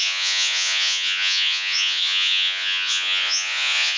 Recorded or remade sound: remade